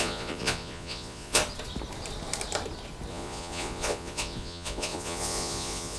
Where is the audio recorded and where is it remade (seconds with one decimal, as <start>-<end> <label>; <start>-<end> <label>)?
0.0-1.4 remade; 1.4-3.1 recorded; 3.1-6.0 remade